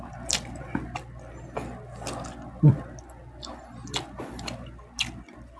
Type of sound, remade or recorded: recorded